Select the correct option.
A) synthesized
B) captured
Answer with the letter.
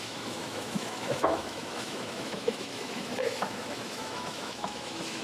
A